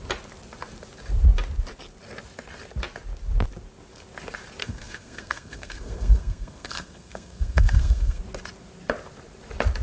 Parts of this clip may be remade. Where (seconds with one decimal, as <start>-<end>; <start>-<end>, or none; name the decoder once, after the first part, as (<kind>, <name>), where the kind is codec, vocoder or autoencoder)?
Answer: 4.6-8.2 (codec, SNAC)